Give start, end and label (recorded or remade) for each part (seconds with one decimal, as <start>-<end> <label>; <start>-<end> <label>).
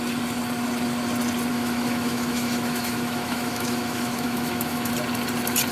0.0-1.5 recorded; 1.5-4.9 remade; 4.9-5.7 recorded